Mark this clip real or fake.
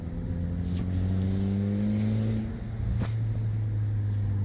real